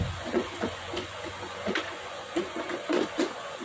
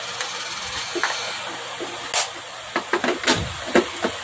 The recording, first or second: second